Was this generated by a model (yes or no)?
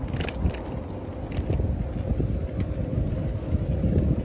no